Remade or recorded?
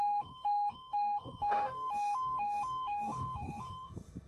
remade